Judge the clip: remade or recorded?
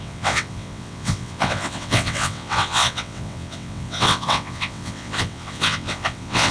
remade